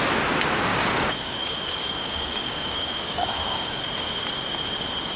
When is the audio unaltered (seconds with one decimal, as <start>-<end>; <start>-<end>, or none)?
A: 0.0-0.7; 3.8-5.2